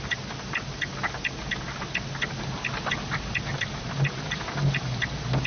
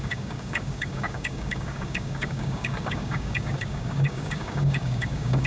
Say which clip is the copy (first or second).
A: second